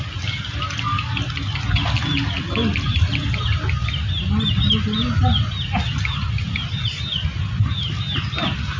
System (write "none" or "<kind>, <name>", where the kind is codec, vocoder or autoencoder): none